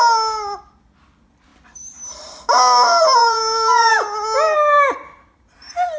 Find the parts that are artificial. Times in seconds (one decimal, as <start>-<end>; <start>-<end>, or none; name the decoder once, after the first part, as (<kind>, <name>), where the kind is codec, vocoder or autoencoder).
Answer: 1.5-3.9 (vocoder, BigVGAN v2)